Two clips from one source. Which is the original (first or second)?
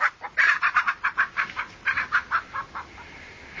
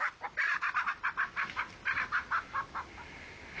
second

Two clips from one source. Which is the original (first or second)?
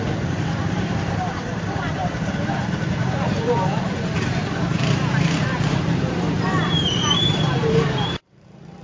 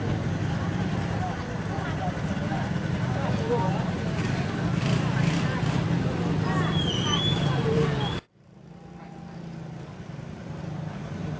second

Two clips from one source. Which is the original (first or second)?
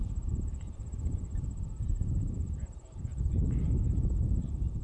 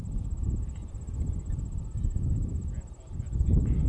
second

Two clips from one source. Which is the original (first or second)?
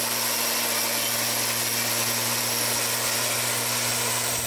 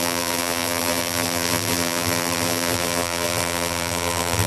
first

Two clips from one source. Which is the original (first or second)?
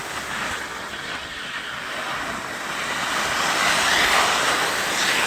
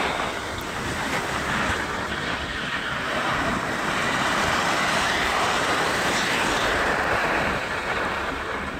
first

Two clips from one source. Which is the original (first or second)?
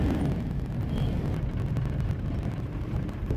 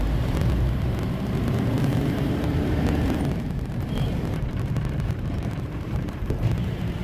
first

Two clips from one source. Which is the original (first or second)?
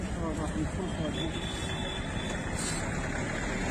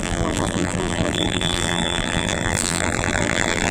first